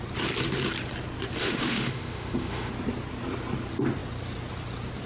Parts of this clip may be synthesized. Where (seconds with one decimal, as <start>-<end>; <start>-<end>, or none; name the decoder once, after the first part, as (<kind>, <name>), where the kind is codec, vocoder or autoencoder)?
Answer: 1.4-2.7 (autoencoder, DAC-VAE)